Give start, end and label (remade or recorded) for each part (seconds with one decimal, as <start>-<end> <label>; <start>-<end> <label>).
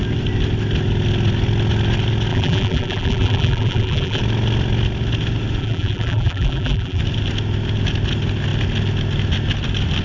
0.0-2.3 recorded; 2.3-4.2 remade; 4.2-5.6 recorded; 5.6-7.0 remade; 7.0-10.0 recorded